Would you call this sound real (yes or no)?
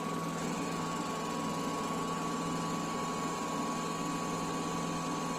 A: yes